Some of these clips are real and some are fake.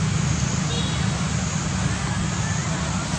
real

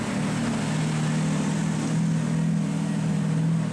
real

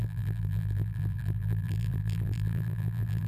fake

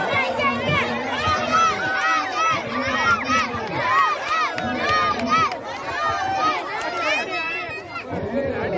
real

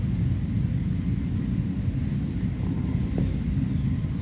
real